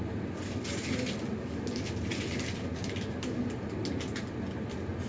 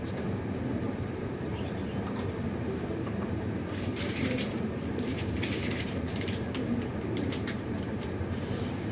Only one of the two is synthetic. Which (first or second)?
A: second